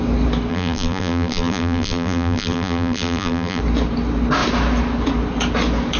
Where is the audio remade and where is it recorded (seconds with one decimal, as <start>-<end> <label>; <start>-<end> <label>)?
0.0-0.5 recorded; 0.5-3.6 remade; 3.6-6.0 recorded